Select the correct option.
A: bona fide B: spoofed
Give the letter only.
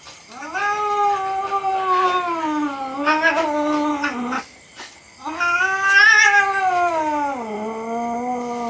A